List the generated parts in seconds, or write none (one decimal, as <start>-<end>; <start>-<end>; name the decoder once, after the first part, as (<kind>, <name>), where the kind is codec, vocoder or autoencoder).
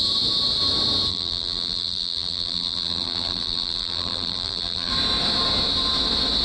1.1-4.9 (vocoder, BigVGAN v2)